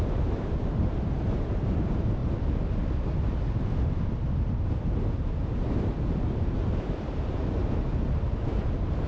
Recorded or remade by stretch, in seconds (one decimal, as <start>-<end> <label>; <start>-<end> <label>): 0.0-2.2 remade; 2.2-5.7 recorded; 5.7-7.6 remade; 7.6-8.5 recorded; 8.5-9.1 remade